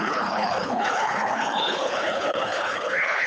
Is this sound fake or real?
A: fake